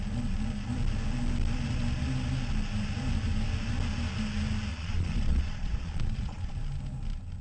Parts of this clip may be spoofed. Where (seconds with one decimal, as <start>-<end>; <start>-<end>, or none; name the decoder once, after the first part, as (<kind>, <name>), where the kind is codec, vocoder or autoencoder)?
4.7-6.5 (vocoder, Vocos)